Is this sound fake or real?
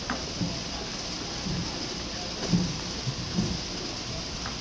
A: real